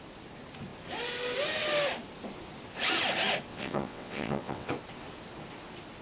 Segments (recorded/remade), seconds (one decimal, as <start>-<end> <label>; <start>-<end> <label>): 0.0-3.5 recorded; 3.5-4.7 remade; 4.7-6.0 recorded